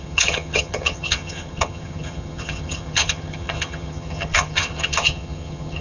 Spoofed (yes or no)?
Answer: yes